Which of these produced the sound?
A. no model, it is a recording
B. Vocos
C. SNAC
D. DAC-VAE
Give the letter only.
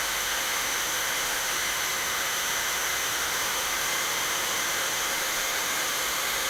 D